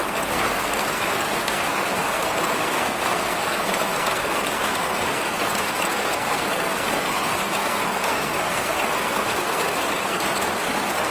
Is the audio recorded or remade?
remade